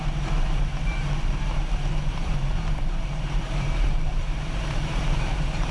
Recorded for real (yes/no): no